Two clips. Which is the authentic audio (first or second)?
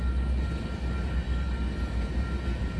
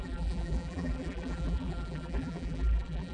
first